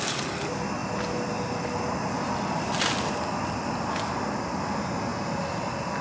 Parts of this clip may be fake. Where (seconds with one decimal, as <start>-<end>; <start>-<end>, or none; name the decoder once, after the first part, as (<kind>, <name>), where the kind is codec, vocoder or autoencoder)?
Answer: none